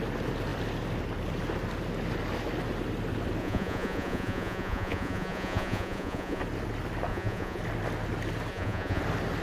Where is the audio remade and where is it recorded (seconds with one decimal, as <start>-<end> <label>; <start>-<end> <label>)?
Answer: 0.0-3.4 recorded; 3.4-6.4 remade; 6.4-7.1 recorded; 7.1-7.6 remade; 7.6-8.5 recorded; 8.5-9.0 remade; 9.0-9.4 recorded